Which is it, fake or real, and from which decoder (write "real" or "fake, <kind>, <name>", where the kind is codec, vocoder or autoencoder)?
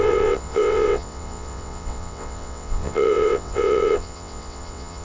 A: fake, vocoder, WaveNeXt